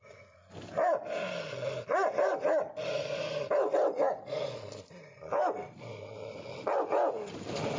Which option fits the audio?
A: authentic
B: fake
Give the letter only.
A